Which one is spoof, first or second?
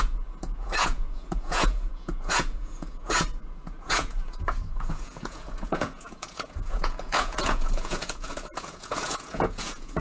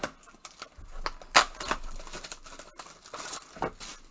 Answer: first